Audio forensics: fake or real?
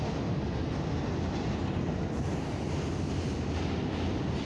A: real